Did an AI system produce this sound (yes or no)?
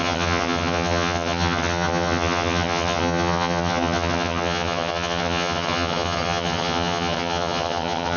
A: yes